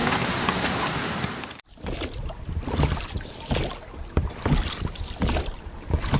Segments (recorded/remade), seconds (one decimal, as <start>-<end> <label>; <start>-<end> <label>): 0.0-6.2 recorded